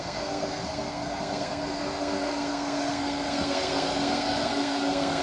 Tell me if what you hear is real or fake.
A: fake